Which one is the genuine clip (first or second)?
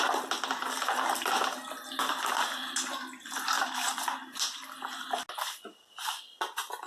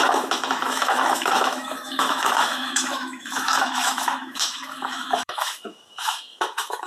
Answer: first